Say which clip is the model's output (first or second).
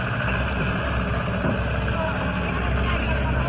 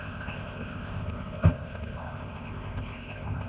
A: second